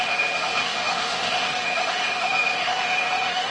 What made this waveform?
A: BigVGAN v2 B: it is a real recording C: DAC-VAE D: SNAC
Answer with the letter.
C